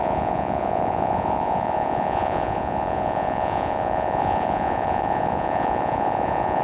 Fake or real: fake